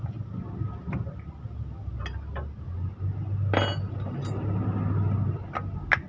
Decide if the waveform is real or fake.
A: real